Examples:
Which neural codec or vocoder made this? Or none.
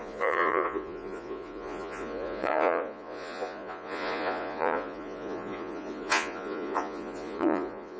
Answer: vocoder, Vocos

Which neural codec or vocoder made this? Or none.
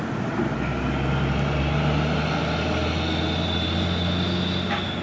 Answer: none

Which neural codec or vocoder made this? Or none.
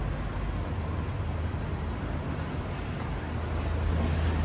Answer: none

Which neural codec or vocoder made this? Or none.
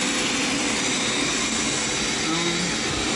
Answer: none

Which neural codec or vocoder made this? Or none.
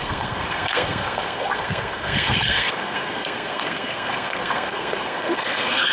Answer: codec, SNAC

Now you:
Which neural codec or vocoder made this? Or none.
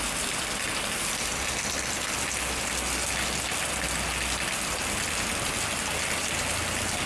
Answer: none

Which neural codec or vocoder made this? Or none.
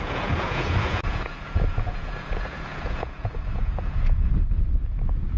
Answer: vocoder, Vocos